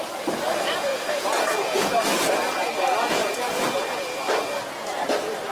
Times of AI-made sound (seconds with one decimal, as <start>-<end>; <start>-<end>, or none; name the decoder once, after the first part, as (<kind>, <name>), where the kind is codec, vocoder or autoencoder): 0.9-2.0 (vocoder, Vocos); 3.2-4.2